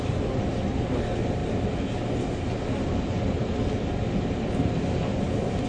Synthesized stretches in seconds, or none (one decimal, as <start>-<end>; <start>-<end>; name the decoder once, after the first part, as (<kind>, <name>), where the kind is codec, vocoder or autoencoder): none